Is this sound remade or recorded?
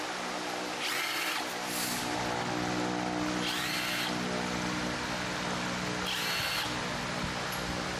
recorded